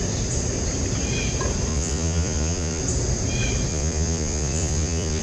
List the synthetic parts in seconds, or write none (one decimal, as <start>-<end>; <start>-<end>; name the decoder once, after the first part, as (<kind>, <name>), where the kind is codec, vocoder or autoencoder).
1.7-2.8 (vocoder, Vocos); 3.7-5.2